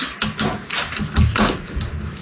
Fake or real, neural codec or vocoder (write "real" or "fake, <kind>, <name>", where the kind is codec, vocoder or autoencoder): real